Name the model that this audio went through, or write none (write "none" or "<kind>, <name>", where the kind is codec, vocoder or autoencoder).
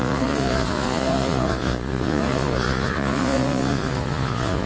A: vocoder, Vocos